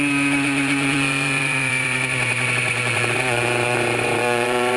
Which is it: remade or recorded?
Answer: remade